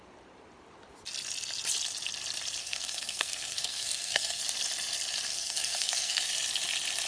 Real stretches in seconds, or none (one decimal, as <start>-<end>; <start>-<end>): 0.0-2.6; 4.4-5.3; 6.2-7.1